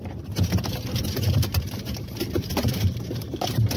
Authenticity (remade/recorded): remade